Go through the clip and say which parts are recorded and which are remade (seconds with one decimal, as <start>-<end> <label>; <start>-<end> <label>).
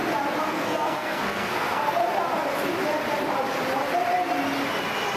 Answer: 0.0-0.5 recorded; 0.5-2.0 remade; 2.0-5.2 recorded